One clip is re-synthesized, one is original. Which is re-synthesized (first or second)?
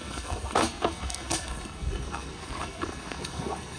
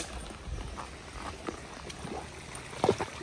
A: first